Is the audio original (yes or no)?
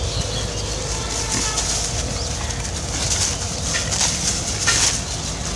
yes